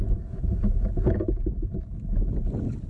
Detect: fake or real real